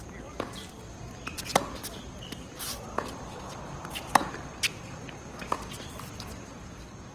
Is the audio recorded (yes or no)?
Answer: no